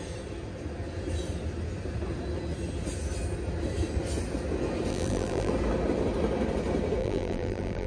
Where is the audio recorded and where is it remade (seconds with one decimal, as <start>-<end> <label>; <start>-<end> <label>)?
0.0-4.9 recorded; 4.9-5.5 remade; 5.5-7.0 recorded; 7.0-7.9 remade